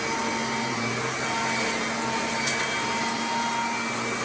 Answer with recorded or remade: recorded